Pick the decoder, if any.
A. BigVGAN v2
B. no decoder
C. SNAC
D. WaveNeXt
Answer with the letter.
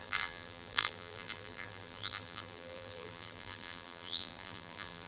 A